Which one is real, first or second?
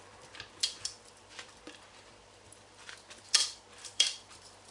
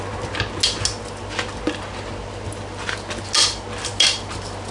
second